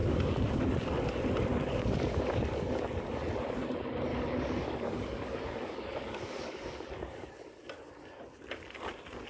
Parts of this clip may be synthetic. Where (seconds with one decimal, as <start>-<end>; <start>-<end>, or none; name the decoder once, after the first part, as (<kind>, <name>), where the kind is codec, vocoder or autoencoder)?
0.0-0.6 (codec, DAC); 1.5-3.2; 4.1-7.3